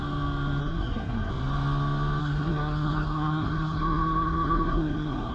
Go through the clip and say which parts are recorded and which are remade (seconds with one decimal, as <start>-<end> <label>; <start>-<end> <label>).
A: 0.0-0.6 recorded; 0.6-1.3 remade; 1.3-2.2 recorded; 2.2-5.3 remade